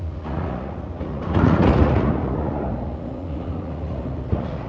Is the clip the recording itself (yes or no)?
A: no